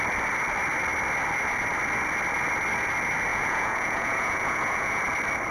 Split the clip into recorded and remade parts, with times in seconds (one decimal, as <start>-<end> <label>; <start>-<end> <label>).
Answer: 0.0-3.3 recorded; 3.3-5.0 remade; 5.0-5.5 recorded